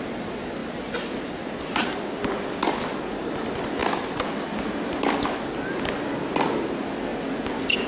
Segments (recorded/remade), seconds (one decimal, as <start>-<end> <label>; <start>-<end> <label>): 0.0-7.9 recorded